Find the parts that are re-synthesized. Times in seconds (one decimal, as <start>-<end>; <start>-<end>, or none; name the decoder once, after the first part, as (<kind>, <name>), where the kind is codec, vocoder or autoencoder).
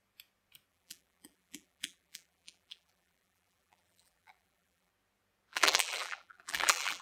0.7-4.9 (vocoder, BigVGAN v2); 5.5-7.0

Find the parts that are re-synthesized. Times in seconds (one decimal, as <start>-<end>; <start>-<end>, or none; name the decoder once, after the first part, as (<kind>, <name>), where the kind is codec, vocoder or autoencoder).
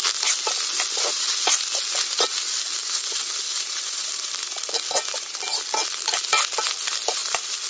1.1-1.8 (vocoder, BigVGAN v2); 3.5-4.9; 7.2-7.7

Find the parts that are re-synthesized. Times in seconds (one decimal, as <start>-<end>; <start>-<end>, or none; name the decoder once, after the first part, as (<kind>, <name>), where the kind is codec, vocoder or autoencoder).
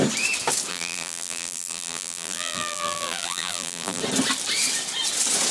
0.7-4.0 (vocoder, BigVGAN v2)